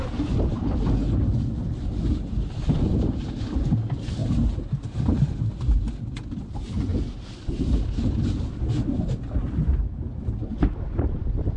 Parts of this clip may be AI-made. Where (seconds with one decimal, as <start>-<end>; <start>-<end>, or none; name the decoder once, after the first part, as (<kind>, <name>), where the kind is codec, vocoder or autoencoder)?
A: 4.2-5.4 (vocoder, BigVGAN v2)